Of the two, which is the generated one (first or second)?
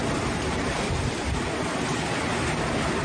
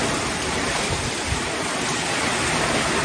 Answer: second